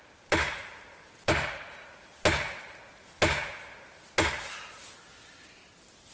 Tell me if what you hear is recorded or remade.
recorded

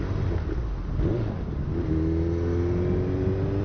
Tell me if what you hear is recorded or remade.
recorded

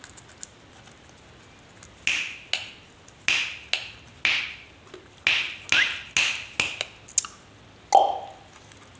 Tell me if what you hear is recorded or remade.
recorded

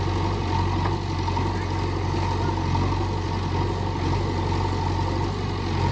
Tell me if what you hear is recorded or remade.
recorded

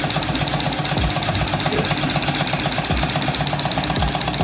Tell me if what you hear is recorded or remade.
recorded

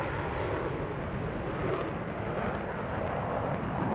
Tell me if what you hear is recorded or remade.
recorded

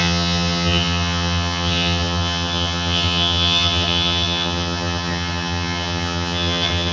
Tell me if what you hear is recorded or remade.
remade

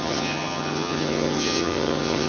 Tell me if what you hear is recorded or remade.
remade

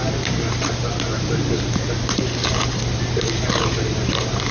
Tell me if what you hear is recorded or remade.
recorded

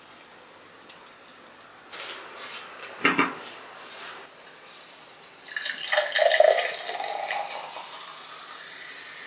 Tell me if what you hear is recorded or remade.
recorded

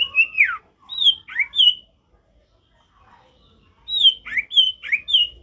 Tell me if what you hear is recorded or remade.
recorded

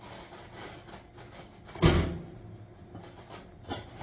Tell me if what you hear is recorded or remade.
recorded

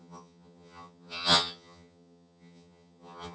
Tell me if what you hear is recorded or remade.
remade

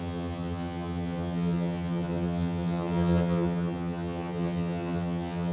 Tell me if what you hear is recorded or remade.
remade